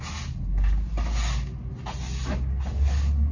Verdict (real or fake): real